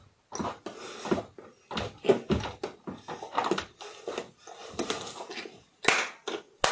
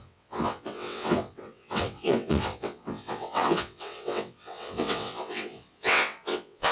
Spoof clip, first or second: second